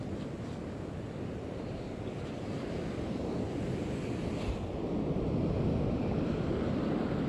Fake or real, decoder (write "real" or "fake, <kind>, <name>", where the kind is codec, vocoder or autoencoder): real